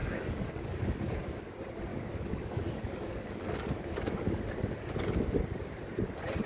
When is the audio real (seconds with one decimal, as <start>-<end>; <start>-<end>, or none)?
1.2-1.9; 5.4-6.5